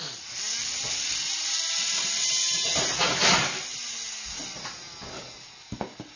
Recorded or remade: recorded